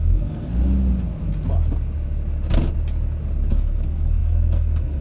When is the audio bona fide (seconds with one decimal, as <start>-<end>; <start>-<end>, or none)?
0.5-3.5